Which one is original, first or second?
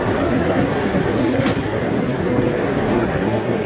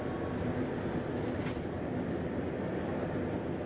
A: second